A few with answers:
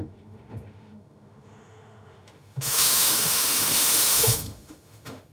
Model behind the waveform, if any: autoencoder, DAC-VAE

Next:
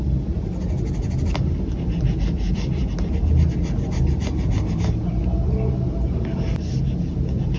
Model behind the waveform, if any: none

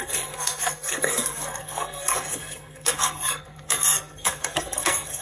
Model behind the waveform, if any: codec, SNAC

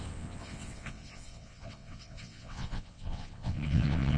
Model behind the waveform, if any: vocoder, WaveNeXt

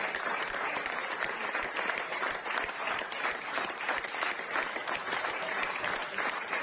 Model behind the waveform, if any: vocoder, BigVGAN v2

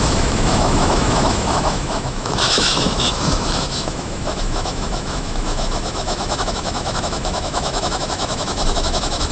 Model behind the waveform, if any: autoencoder, DAC-VAE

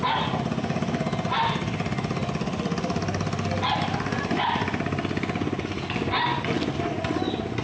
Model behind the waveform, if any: none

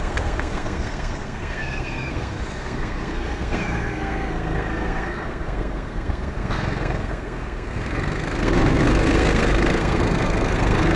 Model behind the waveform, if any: codec, SNAC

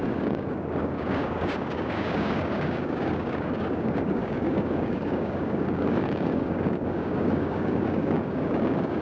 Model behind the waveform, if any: codec, DAC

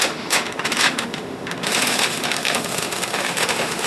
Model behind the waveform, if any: autoencoder, DAC-VAE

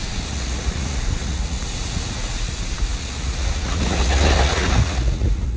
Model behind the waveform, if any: vocoder, Vocos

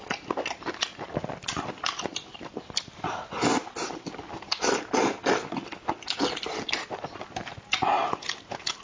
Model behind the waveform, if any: none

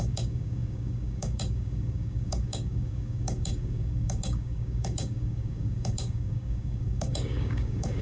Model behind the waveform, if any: codec, DAC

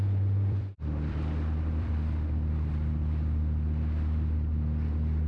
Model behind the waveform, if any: vocoder, BigVGAN v2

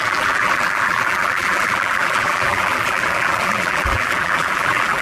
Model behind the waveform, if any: vocoder, BigVGAN v2